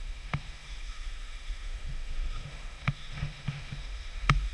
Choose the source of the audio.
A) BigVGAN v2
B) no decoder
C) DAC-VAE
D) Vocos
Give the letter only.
C